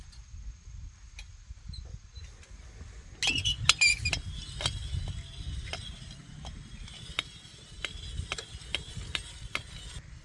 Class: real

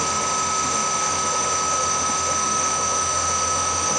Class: fake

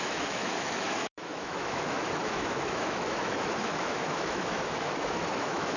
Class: fake